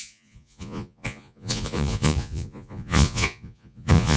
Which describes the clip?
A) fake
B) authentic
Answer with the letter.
A